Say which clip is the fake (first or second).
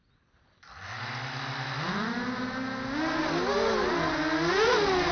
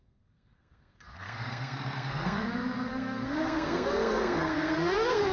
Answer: second